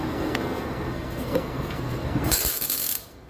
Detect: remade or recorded remade